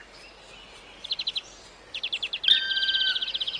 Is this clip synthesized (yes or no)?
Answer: no